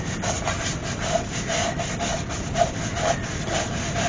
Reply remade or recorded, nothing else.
recorded